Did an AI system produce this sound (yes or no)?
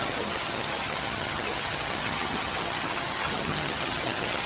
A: yes